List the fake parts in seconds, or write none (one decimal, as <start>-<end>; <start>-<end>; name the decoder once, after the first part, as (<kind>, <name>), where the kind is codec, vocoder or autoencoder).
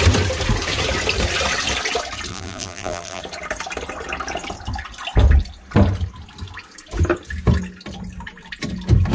2.3-3.2 (vocoder, BigVGAN v2)